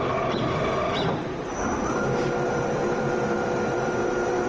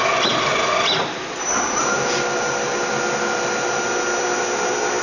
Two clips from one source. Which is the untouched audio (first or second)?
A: second